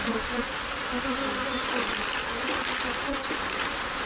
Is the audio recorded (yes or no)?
yes